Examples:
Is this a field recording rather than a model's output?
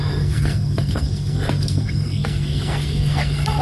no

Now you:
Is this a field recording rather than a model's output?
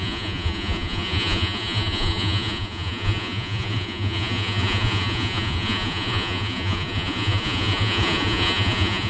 no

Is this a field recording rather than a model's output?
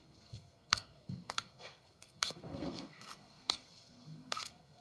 no